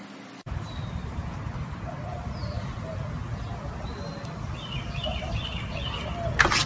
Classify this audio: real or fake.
real